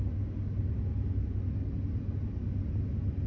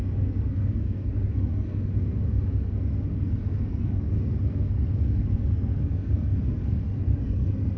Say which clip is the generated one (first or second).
second